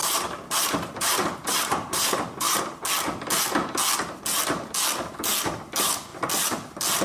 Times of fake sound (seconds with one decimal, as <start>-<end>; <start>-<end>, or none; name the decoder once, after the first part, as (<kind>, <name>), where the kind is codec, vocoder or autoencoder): 0.0-2.6 (vocoder, BigVGAN v2)